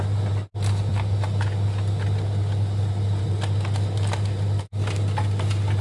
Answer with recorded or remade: recorded